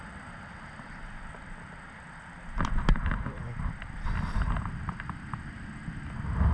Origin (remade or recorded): recorded